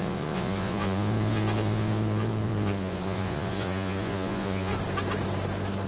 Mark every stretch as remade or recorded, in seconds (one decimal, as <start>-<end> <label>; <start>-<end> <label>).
0.0-4.7 remade; 4.7-5.9 recorded